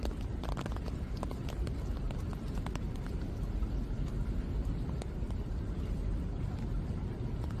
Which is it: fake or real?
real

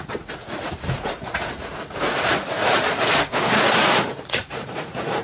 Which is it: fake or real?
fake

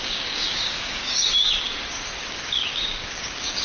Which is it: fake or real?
fake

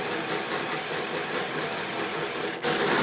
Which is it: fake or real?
real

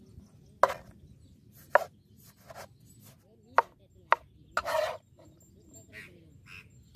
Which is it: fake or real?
real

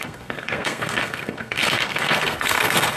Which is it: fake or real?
fake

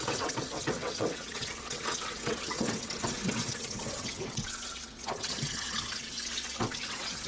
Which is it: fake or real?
fake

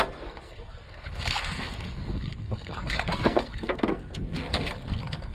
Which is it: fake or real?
fake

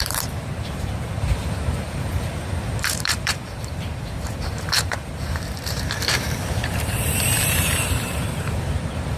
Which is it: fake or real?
fake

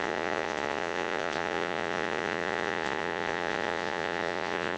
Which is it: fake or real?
fake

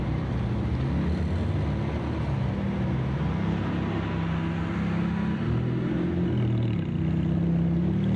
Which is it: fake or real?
real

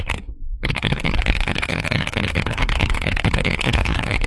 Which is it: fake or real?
fake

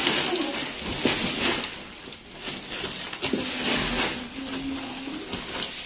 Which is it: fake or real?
real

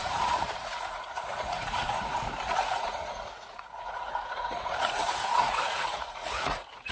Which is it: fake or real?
fake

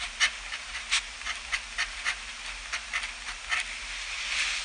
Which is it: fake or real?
real